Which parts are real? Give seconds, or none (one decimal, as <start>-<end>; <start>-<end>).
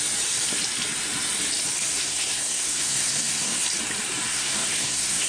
0.0-1.9; 3.6-4.3